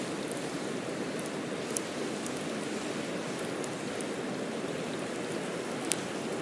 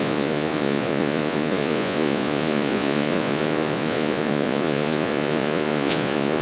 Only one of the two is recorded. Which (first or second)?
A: first